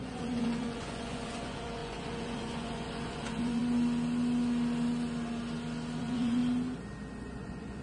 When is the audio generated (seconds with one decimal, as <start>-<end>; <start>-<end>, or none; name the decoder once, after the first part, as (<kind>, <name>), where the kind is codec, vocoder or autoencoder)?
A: 0.0-3.6 (vocoder, Vocos); 6.0-6.4; 7.2-7.8